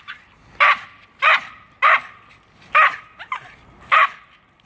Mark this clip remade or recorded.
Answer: recorded